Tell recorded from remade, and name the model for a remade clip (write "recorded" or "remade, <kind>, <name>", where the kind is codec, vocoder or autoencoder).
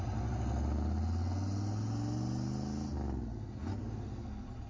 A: recorded